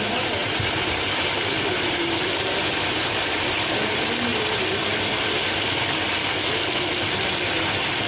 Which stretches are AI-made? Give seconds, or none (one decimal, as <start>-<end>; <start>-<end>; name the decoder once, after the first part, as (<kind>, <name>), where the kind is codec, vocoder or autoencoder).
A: 0.4-3.7 (vocoder, BigVGAN v2); 4.3-5.4